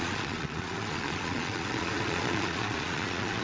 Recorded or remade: remade